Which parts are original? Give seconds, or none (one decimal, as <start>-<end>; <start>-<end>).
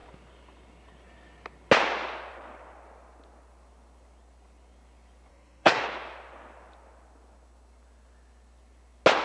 0.0-5.3; 5.8-9.2